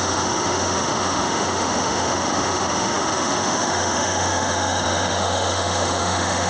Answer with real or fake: fake